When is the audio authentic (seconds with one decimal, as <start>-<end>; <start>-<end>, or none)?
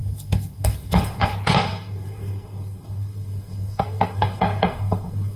none